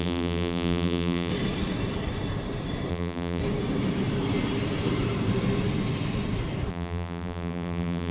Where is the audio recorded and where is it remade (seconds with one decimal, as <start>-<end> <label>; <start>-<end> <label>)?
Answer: 0.0-1.3 remade; 1.3-2.9 recorded; 2.9-3.4 remade; 3.4-6.7 recorded; 6.7-8.1 remade